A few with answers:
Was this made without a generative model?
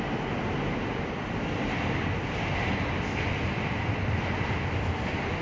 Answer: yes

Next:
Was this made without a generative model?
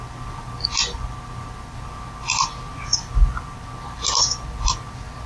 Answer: yes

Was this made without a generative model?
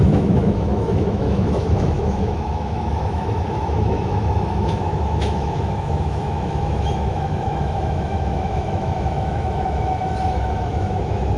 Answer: no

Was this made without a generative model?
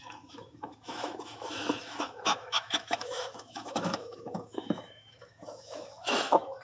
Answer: no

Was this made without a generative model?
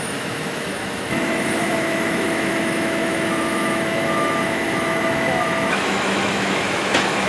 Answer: no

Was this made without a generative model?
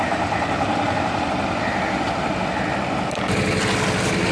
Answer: yes